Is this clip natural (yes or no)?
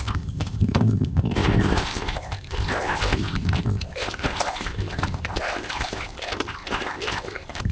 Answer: no